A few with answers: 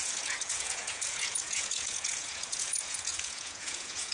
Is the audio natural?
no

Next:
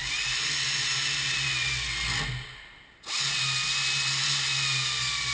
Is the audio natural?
yes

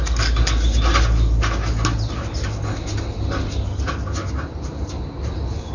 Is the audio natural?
yes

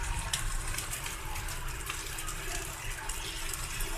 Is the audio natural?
yes